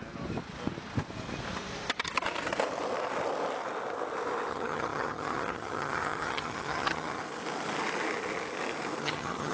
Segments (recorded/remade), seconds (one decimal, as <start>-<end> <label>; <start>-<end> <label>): 0.0-4.5 recorded; 4.5-7.2 remade; 7.2-9.0 recorded; 9.0-9.5 remade